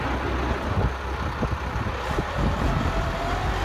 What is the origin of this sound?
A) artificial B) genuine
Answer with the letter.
B